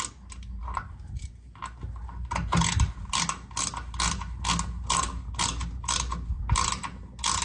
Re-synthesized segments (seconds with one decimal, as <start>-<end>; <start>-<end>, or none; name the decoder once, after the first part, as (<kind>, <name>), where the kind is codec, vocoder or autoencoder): none